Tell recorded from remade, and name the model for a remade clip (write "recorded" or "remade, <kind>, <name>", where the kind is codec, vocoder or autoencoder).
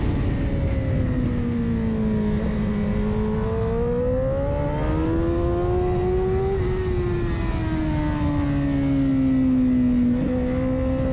recorded